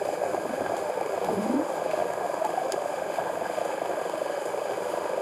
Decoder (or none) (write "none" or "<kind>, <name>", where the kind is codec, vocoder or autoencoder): autoencoder, DAC-VAE